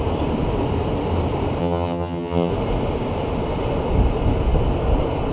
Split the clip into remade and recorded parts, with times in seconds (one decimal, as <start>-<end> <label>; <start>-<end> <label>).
0.0-1.6 recorded; 1.6-2.5 remade; 2.5-5.3 recorded